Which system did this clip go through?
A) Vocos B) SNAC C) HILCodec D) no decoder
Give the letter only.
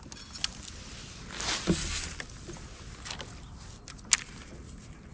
D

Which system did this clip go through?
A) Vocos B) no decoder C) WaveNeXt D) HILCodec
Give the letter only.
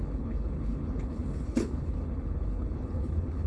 D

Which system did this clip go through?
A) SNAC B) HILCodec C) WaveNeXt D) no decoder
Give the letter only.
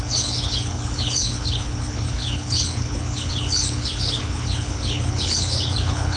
B